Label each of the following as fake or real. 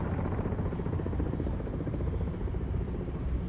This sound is fake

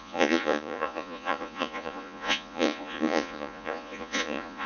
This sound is fake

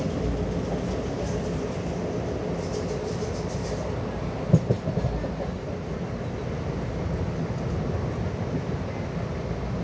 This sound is real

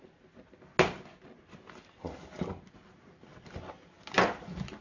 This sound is real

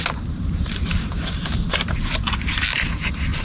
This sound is fake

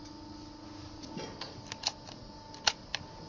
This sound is real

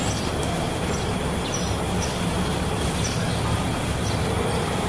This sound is real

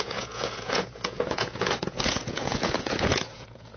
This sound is fake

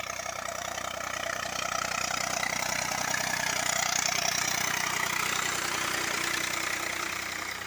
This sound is fake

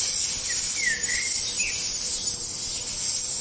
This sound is real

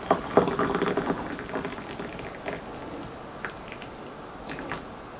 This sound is real